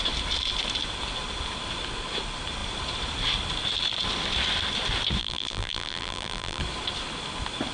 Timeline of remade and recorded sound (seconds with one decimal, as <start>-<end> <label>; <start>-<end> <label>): 0.0-5.2 recorded; 5.2-6.6 remade; 6.6-7.7 recorded